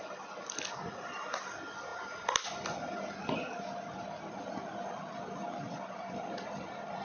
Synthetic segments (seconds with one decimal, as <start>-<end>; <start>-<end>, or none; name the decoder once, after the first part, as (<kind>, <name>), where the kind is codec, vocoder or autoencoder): none